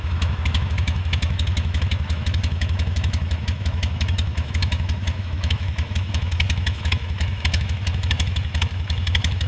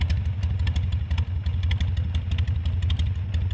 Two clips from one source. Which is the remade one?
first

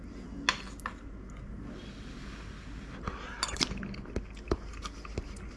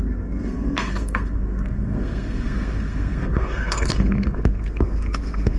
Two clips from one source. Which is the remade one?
second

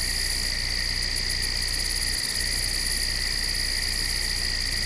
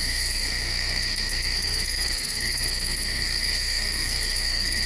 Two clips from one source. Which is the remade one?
second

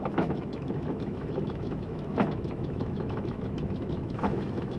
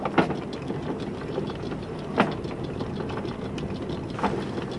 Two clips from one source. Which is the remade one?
first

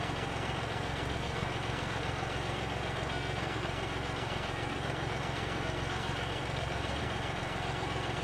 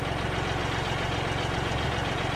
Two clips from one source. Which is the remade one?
first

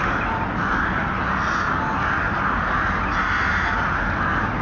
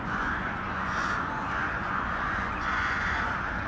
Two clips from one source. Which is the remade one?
second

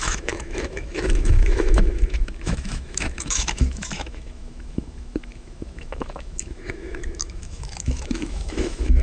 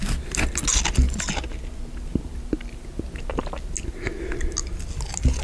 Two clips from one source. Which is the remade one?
first